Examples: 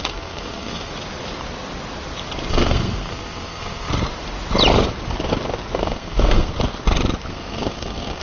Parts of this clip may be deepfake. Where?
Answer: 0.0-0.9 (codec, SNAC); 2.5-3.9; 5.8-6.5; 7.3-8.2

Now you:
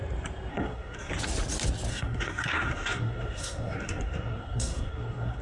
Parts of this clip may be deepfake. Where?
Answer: 0.5-1.1 (codec, SNAC); 1.9-5.4

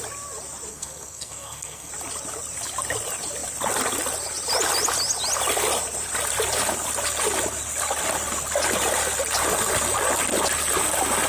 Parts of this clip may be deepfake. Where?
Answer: 0.7-1.9 (codec, SNAC)

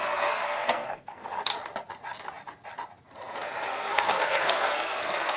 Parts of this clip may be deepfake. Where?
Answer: 0.0-1.5 (codec, SNAC); 3.7-5.4

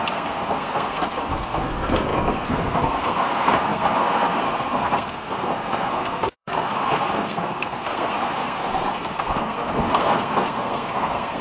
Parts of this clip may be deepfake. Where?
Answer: 0.0-11.4 (codec, SNAC)